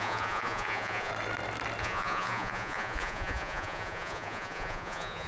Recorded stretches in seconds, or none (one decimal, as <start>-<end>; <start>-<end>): 1.1-1.8